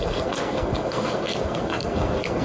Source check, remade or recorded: remade